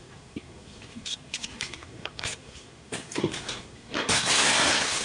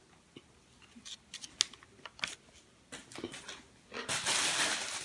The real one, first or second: second